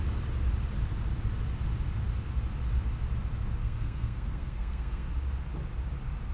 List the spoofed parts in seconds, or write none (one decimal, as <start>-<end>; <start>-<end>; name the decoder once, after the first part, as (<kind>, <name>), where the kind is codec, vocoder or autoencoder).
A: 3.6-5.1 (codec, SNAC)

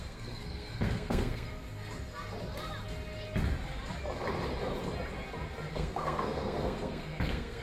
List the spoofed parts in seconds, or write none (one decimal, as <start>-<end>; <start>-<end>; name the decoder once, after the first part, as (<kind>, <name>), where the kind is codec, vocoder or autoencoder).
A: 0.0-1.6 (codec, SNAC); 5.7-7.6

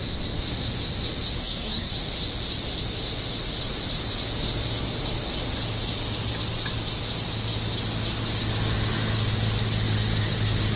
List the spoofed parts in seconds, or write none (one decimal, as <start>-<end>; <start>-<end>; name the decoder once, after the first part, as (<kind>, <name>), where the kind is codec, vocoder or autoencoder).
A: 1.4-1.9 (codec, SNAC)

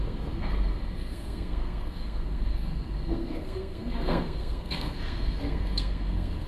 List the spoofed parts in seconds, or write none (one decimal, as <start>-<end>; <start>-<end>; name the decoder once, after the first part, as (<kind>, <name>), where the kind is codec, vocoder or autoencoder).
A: 0.0-6.5 (codec, SNAC)